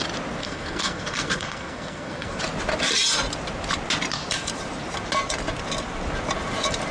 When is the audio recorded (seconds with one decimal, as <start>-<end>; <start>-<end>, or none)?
0.0-0.4; 2.4-6.9